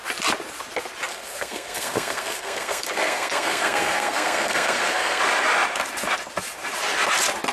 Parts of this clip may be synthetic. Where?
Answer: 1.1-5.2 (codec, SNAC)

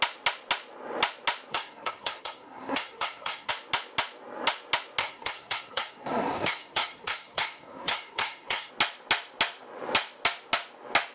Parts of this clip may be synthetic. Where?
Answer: 1.5-3.5 (codec, SNAC); 5.0-8.7

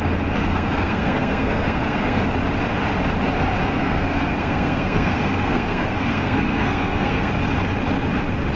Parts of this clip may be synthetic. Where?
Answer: 0.5-2.2 (codec, SNAC); 3.8-7.3

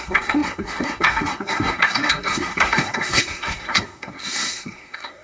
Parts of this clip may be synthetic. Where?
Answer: 0.0-5.2 (codec, SNAC)